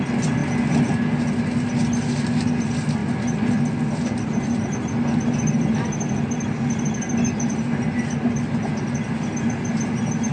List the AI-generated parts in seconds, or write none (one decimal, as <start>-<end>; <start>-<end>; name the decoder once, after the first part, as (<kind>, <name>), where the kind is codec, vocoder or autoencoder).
none